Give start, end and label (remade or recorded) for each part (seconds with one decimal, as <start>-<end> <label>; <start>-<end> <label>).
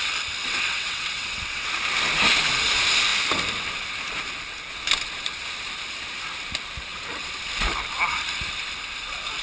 0.0-0.4 recorded; 0.4-1.7 remade; 1.7-9.4 recorded